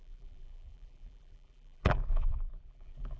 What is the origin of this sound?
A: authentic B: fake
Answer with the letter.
B